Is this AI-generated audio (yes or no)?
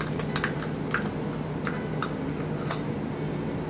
no